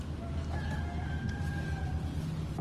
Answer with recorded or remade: recorded